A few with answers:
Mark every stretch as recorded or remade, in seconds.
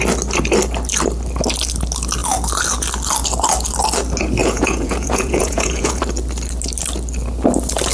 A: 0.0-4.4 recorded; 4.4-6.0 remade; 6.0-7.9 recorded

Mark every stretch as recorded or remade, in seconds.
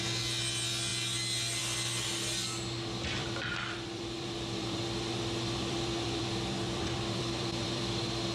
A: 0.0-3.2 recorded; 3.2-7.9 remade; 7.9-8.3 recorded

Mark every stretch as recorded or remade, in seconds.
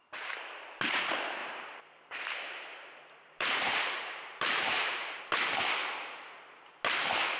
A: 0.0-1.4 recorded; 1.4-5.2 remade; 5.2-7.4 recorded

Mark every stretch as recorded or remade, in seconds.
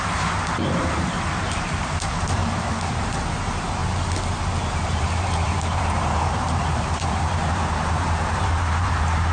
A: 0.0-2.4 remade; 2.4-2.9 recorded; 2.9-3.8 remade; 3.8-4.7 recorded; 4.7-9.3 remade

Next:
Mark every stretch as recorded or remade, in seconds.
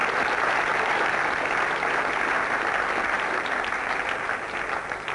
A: 0.0-5.1 recorded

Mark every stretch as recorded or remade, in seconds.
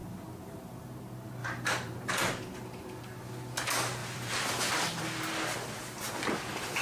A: 0.0-0.8 remade; 0.8-1.4 recorded; 1.4-2.1 remade; 2.1-4.0 recorded; 4.0-5.0 remade; 5.0-6.8 recorded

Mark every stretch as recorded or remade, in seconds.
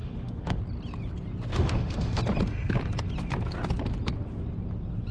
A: 0.0-0.6 remade; 0.6-1.5 recorded; 1.5-2.2 remade; 2.2-5.1 recorded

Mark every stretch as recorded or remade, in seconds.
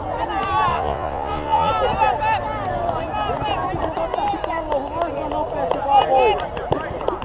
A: 0.0-0.7 recorded; 0.7-1.7 remade; 1.7-7.2 recorded